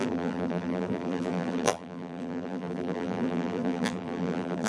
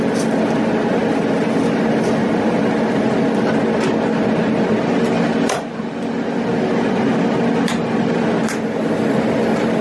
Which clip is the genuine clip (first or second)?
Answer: second